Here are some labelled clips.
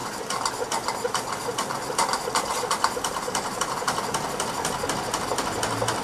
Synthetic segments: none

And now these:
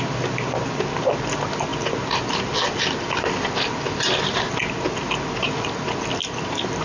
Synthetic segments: none

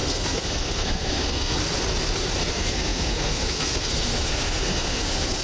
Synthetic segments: 0.0-1.6 (codec, SNAC); 2.5-5.4

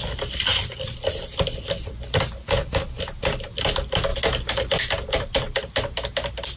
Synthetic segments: none

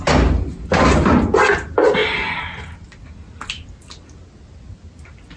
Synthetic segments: none

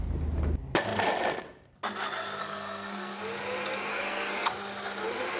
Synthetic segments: 2.4-3.2 (codec, SNAC); 3.9-4.5